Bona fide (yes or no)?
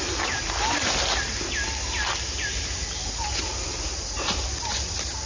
yes